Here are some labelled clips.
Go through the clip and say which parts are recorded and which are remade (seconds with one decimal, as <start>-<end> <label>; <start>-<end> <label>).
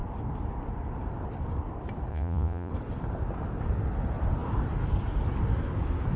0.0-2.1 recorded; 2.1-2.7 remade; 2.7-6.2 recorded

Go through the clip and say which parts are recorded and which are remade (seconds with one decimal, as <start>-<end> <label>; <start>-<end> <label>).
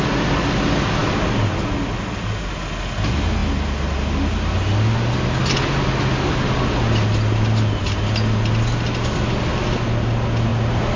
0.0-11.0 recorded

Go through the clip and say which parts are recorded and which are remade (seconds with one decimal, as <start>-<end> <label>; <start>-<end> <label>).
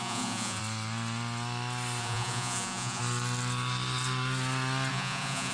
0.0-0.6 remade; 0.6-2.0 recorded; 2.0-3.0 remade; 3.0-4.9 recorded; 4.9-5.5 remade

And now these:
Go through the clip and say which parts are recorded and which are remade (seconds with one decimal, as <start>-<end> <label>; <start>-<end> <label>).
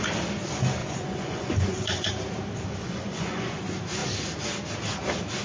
0.0-0.8 recorded; 0.8-2.1 remade; 2.1-2.8 recorded; 2.8-3.6 remade; 3.6-5.4 recorded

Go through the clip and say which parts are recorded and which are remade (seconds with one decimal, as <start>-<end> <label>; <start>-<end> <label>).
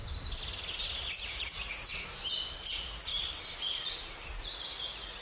0.0-1.2 recorded; 1.2-1.9 remade; 1.9-2.7 recorded; 2.7-3.1 remade; 3.1-4.3 recorded; 4.3-5.2 remade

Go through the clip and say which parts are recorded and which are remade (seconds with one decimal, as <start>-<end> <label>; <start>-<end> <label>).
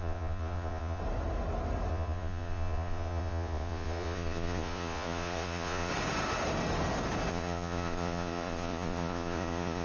0.0-1.0 remade; 1.0-1.9 recorded; 1.9-5.9 remade; 5.9-7.3 recorded; 7.3-9.8 remade